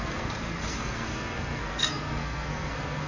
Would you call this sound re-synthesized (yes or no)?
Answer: yes